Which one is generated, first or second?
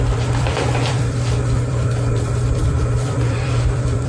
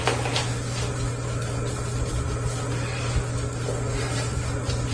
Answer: first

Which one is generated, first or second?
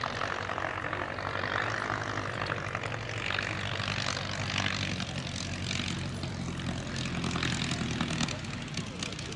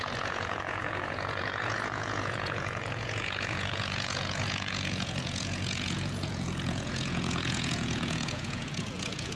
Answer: second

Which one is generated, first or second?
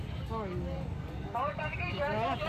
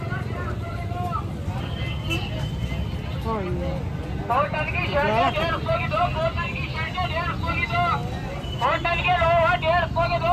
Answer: first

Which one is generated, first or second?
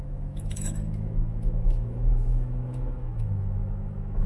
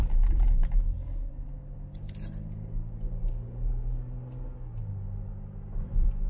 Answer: first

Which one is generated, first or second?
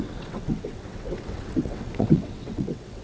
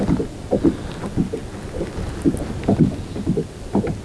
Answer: first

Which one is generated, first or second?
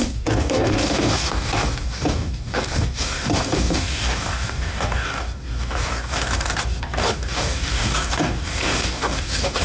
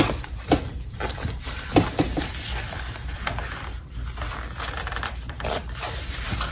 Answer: first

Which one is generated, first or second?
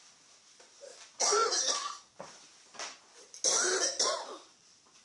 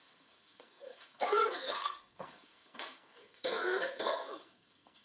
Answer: second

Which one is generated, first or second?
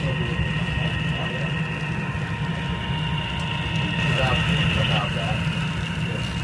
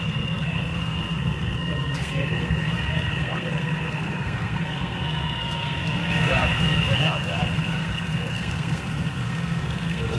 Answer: second